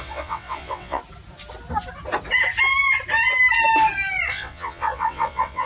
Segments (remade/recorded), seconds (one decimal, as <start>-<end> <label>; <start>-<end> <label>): 0.0-1.0 remade; 1.0-4.3 recorded; 4.3-5.7 remade